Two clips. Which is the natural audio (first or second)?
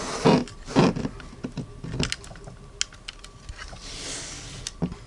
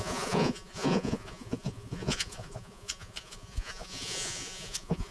first